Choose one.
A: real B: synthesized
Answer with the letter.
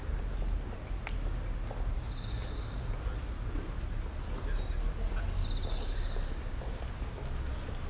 A